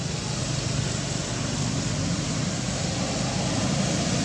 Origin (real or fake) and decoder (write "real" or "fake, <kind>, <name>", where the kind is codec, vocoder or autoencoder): real